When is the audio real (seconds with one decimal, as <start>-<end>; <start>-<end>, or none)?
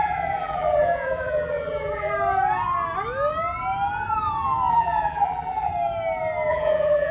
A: 2.1-4.7; 5.7-6.5